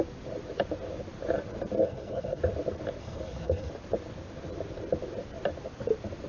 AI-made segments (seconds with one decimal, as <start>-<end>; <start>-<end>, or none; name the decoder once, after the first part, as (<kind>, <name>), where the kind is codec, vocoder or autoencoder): 1.8-2.4 (codec, SNAC); 3.0-3.7

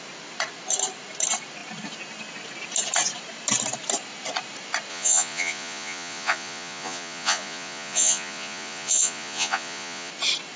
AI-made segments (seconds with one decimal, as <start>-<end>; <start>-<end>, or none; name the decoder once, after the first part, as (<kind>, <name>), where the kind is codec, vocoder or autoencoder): 4.9-10.1 (vocoder, Vocos)

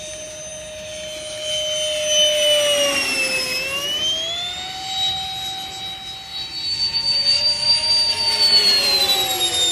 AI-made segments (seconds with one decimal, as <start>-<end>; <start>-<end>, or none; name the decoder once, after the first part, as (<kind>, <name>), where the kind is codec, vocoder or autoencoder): 6.3-7.7 (vocoder, BigVGAN v2)

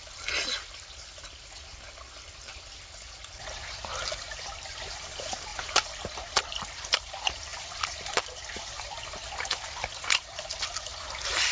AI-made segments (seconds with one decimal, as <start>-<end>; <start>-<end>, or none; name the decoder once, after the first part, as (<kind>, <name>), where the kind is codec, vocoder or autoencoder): none

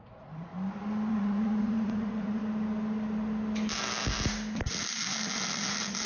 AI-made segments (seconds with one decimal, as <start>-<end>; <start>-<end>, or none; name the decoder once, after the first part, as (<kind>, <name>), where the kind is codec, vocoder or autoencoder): 0.0-0.5 (vocoder, Vocos); 1.1-2.4

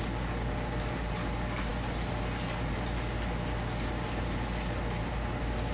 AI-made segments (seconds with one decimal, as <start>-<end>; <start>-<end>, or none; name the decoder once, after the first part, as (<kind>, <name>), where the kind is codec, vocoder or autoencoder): none

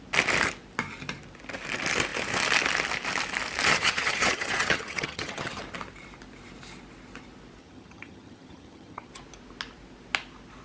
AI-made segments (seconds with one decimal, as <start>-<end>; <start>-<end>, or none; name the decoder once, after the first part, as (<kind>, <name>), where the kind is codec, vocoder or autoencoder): 3.7-5.6 (vocoder, HiFi-GAN); 7.6-9.1